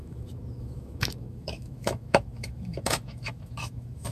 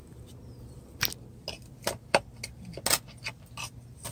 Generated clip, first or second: first